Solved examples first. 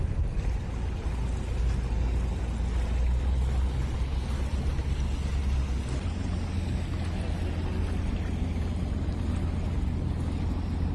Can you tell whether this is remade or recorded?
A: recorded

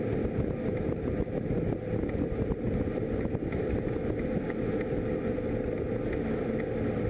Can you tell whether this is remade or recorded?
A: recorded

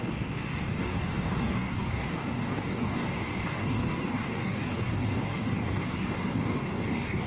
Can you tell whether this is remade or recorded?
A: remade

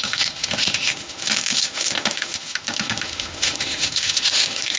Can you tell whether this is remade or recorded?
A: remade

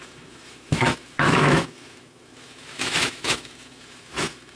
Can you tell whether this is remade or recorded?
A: remade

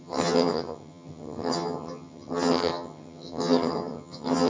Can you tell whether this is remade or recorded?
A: remade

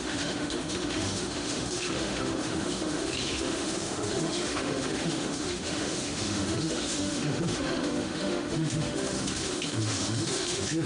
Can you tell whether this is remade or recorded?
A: remade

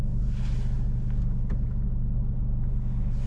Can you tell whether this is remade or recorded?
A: recorded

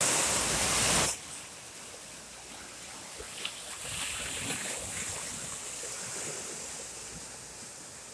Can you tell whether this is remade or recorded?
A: recorded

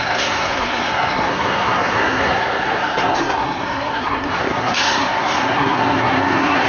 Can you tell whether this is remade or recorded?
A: remade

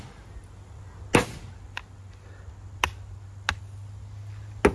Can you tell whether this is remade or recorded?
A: recorded